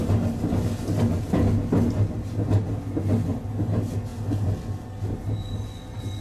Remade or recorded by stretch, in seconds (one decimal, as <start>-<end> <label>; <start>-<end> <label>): 0.0-6.2 recorded